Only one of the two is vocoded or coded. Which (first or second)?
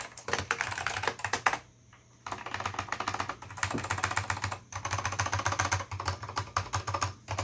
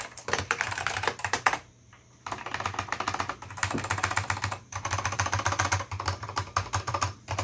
second